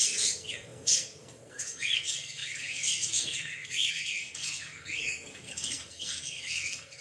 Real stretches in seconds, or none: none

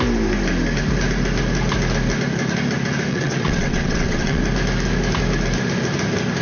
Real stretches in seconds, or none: 0.0-3.1; 4.4-6.4

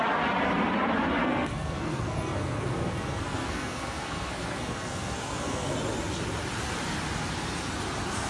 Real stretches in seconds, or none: 0.0-1.2; 5.7-8.3

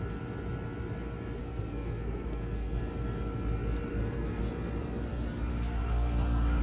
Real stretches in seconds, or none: 0.0-1.4; 2.8-3.9; 4.4-5.5

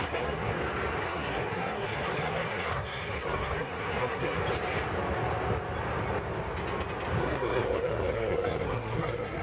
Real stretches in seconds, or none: 0.5-1.0; 4.4-7.2

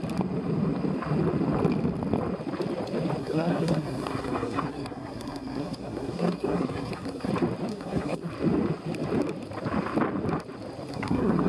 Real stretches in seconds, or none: 0.0-3.2; 7.3-7.7; 8.3-10.9

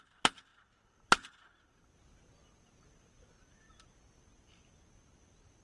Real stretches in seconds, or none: 0.0-5.6